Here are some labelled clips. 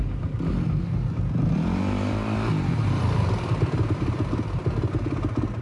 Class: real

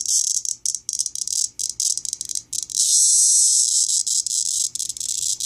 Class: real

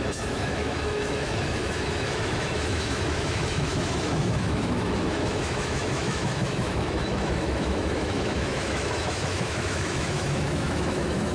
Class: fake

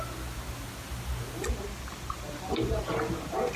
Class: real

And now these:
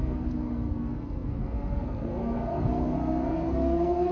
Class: fake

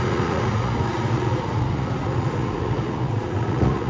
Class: fake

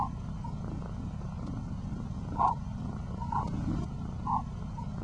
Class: real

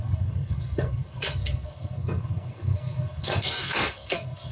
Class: fake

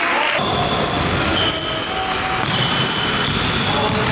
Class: real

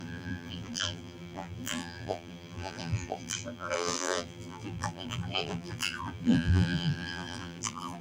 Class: fake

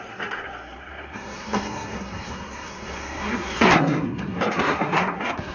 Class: fake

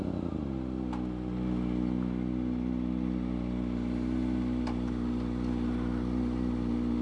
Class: real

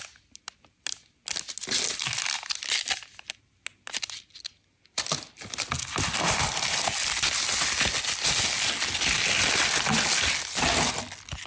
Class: real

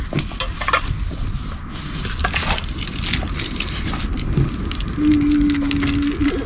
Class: real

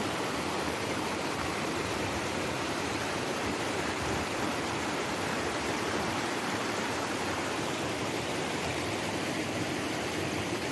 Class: fake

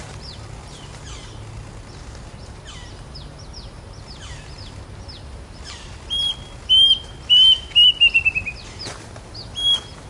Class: real